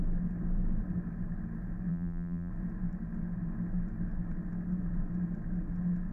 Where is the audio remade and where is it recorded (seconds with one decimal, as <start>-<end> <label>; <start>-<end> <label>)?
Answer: 0.0-1.9 recorded; 1.9-2.5 remade; 2.5-6.1 recorded